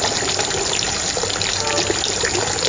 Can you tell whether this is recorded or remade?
recorded